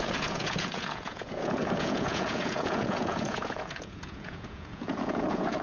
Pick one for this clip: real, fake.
fake